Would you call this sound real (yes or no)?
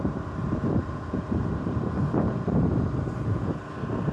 yes